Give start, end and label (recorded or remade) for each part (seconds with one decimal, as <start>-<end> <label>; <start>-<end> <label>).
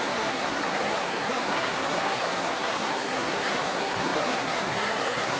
0.0-5.4 remade